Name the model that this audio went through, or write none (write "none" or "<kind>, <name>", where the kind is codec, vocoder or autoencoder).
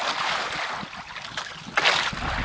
none